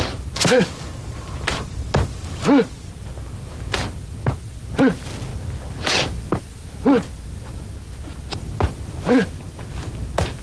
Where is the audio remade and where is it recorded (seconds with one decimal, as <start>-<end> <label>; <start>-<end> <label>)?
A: 0.0-10.4 recorded